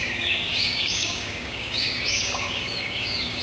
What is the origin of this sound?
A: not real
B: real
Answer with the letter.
A